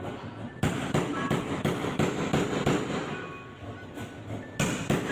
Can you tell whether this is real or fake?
real